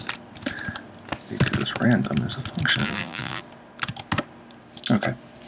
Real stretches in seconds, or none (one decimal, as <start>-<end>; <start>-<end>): 0.0-2.8; 3.4-5.5